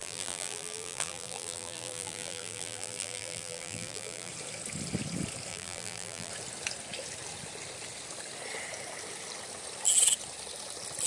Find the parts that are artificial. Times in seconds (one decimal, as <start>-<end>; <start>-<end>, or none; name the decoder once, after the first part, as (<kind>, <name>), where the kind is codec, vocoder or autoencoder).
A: 0.0-4.3 (vocoder, BigVGAN v2); 5.5-6.3

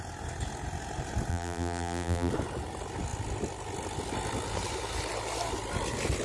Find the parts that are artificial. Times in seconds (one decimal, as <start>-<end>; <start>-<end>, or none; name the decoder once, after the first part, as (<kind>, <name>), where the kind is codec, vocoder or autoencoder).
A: 1.3-2.3 (vocoder, BigVGAN v2)